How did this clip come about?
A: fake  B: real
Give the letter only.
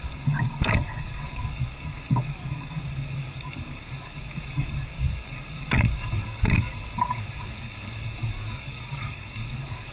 A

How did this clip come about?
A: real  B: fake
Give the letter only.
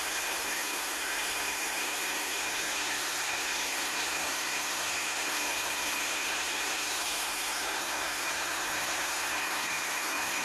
B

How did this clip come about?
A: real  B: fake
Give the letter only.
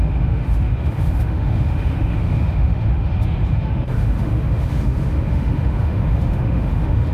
B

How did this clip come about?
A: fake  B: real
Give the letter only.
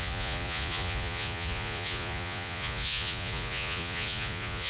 A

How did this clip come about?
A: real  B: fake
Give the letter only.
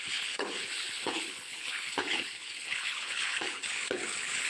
B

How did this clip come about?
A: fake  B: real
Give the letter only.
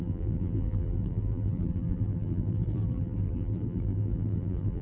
A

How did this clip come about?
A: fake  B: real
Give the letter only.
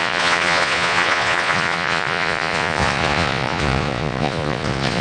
A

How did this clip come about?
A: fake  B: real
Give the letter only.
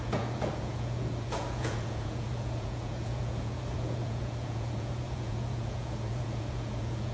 A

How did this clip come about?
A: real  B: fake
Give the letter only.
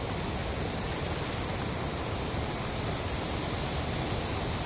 A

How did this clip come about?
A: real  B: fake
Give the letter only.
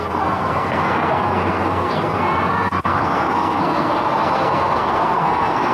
B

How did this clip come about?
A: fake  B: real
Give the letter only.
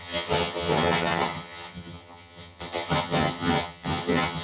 A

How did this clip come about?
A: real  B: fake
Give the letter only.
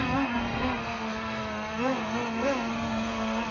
B